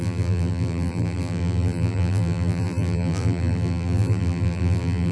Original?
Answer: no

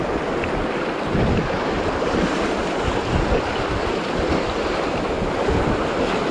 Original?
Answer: yes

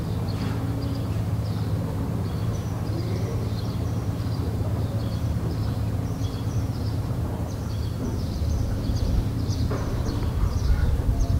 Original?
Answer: no